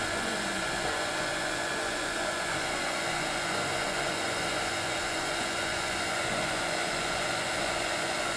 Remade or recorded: remade